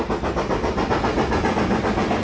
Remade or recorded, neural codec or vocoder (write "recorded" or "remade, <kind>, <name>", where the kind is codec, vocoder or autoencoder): recorded